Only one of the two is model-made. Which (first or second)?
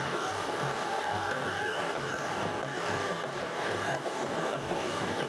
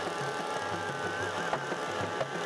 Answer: first